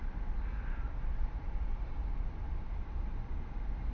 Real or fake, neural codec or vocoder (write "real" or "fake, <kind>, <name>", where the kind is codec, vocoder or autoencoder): fake, vocoder, BigVGAN v2